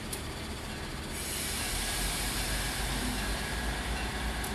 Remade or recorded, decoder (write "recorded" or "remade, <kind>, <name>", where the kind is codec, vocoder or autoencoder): recorded